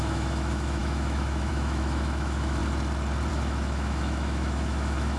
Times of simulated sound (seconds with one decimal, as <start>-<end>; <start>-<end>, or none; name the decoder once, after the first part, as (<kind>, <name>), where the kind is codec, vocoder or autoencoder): 0.0-2.6 (autoencoder, DAC-VAE); 3.3-5.2